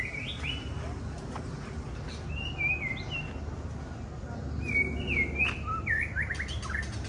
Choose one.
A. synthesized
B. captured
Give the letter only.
B